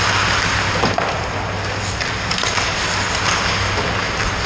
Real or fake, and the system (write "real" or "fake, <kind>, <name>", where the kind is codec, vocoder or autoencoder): real